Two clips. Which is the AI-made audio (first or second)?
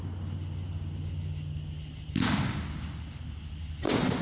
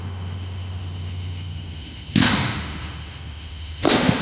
second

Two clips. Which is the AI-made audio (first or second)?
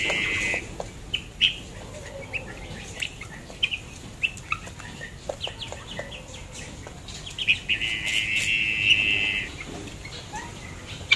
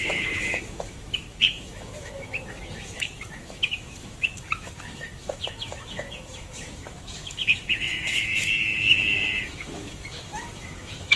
second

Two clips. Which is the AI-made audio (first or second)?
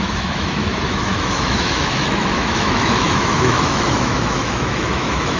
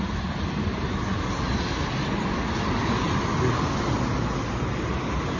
first